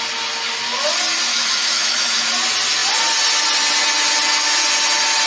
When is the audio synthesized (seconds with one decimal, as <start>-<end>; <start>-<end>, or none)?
1.3-2.3